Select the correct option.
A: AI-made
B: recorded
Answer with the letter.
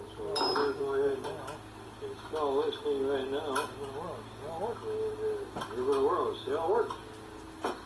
B